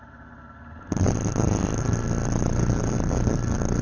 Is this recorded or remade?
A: recorded